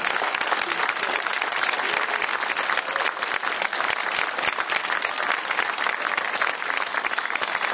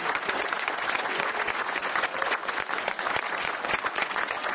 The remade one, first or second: second